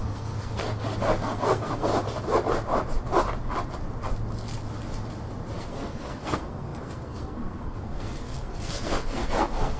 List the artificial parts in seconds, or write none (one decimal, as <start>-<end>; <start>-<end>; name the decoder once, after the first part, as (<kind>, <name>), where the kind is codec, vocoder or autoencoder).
0.0-0.7 (codec, SNAC); 1.2-1.9; 5.6-9.8